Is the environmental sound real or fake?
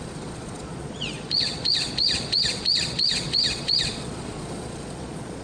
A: fake